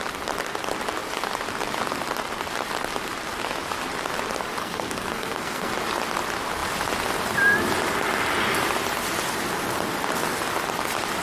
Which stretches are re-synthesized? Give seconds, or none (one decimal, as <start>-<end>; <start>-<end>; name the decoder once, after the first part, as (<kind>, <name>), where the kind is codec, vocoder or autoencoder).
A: 4.6-5.7 (codec, SNAC)